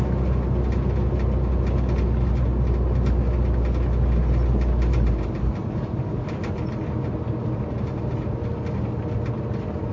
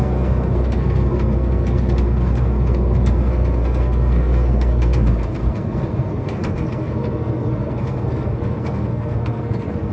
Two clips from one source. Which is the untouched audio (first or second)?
first